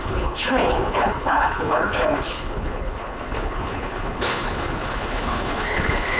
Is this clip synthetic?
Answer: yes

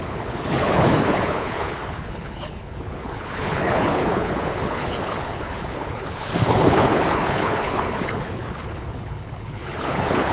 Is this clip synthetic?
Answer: yes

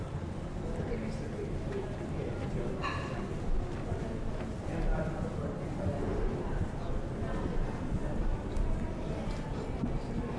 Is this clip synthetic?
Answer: no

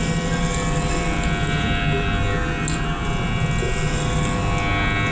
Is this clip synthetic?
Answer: no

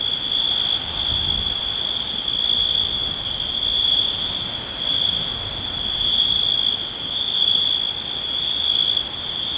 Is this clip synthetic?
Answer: no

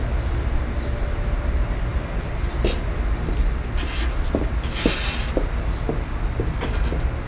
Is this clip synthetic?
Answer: no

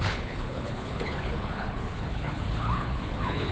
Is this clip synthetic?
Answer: yes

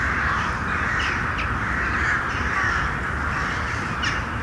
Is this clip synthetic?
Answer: no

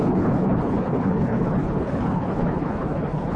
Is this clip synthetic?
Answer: yes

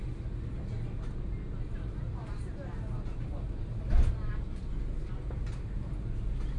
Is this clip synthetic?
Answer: no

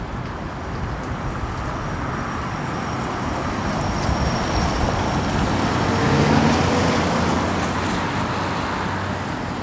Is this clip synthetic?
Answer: no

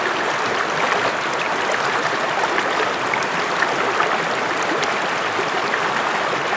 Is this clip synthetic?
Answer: no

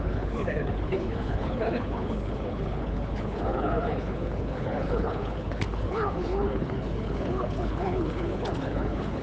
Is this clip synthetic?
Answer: yes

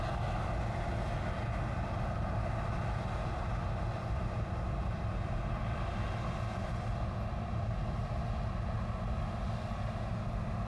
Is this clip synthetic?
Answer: no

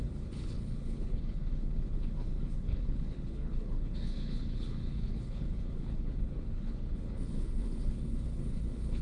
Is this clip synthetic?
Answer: yes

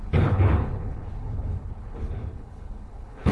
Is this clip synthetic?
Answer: yes